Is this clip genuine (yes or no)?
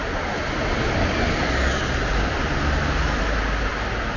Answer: yes